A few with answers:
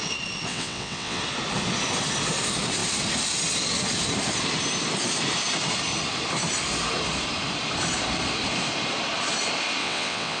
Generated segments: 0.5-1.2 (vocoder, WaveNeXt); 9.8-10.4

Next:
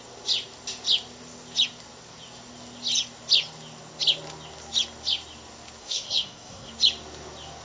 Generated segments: 5.8-6.7 (codec, SNAC)

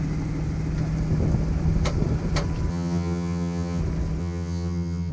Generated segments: 2.7-3.8 (vocoder, HiFi-GAN); 4.2-5.1

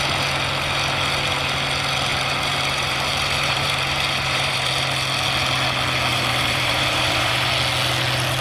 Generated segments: 2.1-4.7 (vocoder, BigVGAN v2); 6.1-7.5

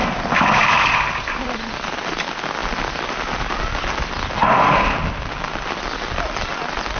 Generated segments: none

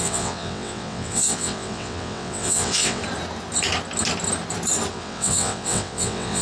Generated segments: 0.0-3.0 (vocoder, WaveNeXt); 4.9-6.4

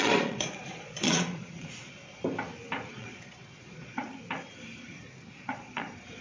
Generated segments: 0.0-2.2 (vocoder, Vocos); 2.9-4.1; 5.3-6.2

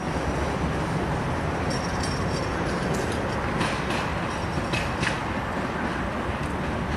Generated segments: none